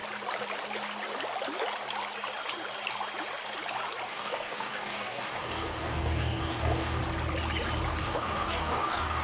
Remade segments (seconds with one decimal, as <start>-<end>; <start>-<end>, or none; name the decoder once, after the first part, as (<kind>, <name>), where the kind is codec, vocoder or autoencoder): 4.1-7.0 (codec, DAC); 8.0-9.2